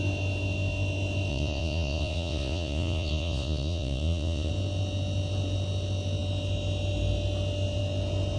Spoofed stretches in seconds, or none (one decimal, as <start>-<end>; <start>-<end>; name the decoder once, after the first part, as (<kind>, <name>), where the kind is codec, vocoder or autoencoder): 1.3-4.5 (vocoder, Vocos)